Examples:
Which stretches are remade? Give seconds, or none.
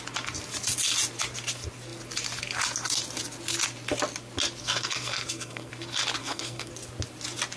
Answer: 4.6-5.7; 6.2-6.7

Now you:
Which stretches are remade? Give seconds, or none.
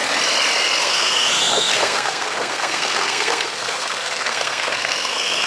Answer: 0.8-5.5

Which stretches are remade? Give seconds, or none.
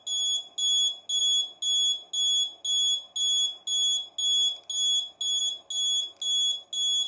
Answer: none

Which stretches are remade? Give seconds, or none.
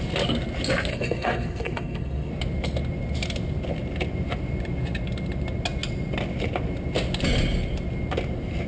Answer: 0.9-2.3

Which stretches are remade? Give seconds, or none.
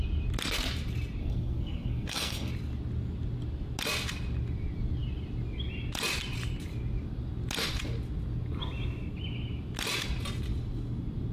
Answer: 1.2-2.5